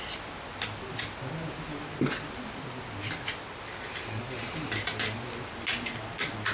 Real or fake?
real